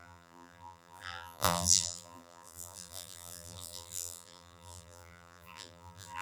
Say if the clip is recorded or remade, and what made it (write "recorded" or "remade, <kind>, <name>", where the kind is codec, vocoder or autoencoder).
remade, vocoder, BigVGAN v2